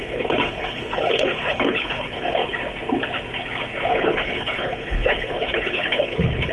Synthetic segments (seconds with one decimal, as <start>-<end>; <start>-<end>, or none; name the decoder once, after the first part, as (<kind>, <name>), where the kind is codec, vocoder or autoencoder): 0.0-2.4 (codec, HILCodec); 3.9-6.5